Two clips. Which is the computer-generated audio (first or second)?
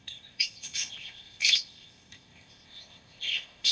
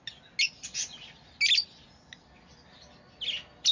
first